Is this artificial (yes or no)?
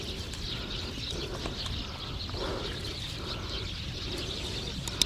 no